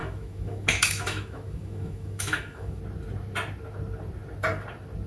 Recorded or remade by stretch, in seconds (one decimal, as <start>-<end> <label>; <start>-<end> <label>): 0.0-2.8 remade; 2.8-5.1 recorded